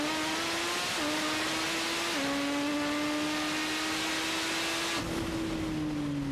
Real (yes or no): yes